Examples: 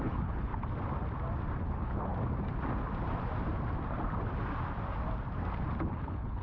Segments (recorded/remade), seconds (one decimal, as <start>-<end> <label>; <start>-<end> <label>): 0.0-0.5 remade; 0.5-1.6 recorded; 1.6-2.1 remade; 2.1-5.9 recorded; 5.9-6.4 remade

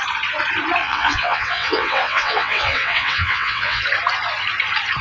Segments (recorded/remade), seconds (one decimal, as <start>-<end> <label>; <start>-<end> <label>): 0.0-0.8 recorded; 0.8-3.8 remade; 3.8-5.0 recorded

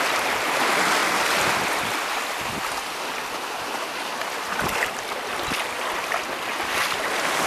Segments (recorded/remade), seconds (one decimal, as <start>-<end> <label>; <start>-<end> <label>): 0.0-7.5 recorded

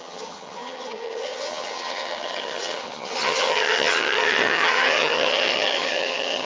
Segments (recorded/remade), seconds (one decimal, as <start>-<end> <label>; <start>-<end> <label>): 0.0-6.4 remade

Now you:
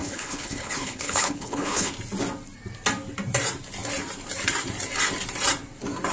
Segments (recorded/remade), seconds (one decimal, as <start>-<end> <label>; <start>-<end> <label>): 0.0-1.9 remade; 1.9-6.1 recorded